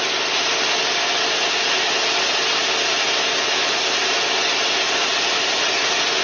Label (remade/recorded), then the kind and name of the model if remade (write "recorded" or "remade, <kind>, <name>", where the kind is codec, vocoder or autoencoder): recorded